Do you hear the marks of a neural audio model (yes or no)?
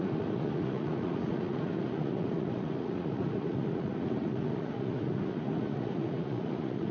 yes